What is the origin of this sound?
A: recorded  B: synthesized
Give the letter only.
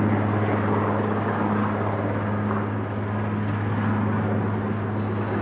A